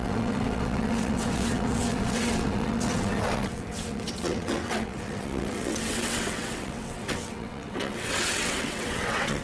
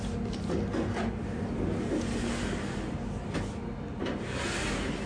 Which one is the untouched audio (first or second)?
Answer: second